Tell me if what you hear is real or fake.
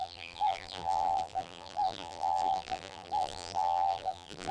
fake